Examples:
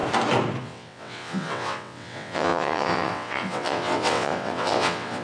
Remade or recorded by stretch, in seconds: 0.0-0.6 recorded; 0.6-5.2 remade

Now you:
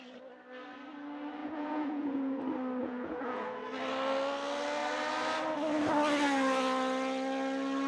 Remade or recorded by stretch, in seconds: 0.0-1.4 recorded; 1.4-2.4 remade; 2.4-2.8 recorded; 2.8-3.6 remade; 3.6-7.9 recorded

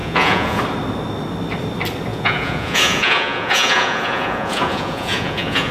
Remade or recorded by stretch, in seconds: 0.0-0.6 remade; 0.6-2.1 recorded; 2.1-5.7 remade

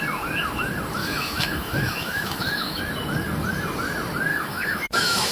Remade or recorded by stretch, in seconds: 0.0-1.0 recorded; 1.0-2.8 remade; 2.8-4.3 recorded; 4.3-5.3 remade

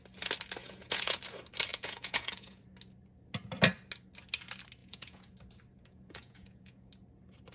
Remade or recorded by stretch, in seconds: 0.0-0.6 recorded; 0.6-1.2 remade; 1.2-1.7 recorded; 1.7-2.6 remade; 2.6-4.8 recorded; 4.8-5.3 remade; 5.3-5.7 recorded; 5.7-6.9 remade; 6.9-7.5 recorded

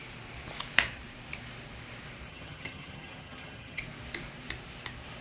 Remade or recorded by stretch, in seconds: 0.0-2.3 recorded; 2.3-3.8 remade; 3.8-5.2 recorded